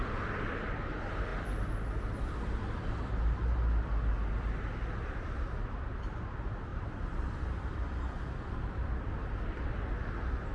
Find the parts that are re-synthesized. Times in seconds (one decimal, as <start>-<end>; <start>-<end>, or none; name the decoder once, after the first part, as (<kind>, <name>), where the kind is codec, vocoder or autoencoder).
1.3-5.8 (vocoder, BigVGAN v2); 6.7-9.9